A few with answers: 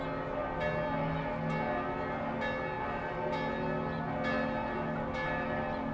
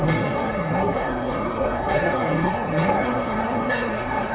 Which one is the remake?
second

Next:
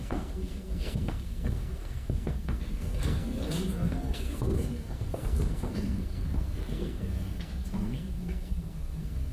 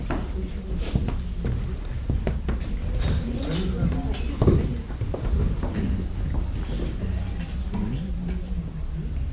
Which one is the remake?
first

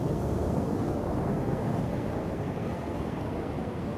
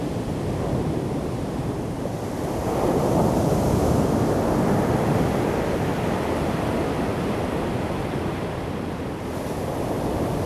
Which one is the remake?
first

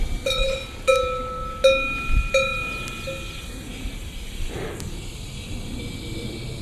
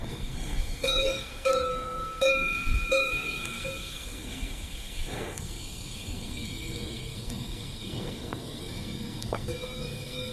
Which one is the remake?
second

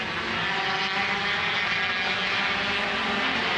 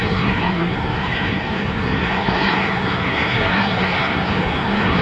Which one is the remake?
second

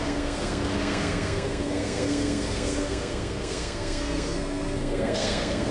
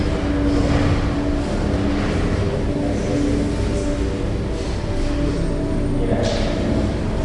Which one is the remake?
first